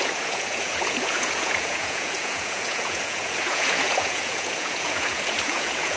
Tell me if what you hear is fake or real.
fake